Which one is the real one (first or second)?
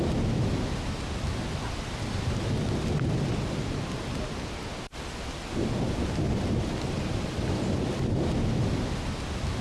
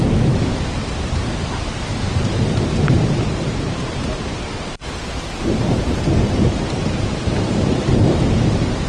first